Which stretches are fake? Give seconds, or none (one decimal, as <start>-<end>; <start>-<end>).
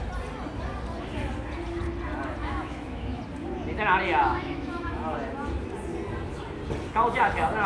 2.4-3.2; 4.2-5.0